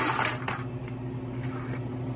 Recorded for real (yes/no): yes